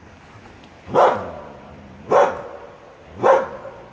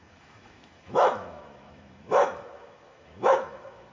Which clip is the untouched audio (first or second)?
first